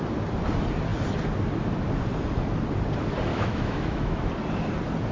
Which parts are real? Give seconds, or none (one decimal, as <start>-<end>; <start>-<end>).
0.0-3.3; 4.3-5.1